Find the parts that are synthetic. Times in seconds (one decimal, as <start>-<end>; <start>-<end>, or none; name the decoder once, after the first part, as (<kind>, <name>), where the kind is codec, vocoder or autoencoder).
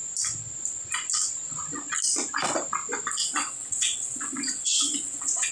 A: 3.2-5.5 (vocoder, WaveNeXt)